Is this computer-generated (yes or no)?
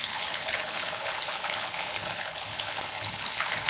yes